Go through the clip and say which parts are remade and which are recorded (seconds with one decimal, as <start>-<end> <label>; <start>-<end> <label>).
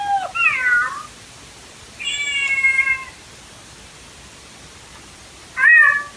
0.0-6.2 recorded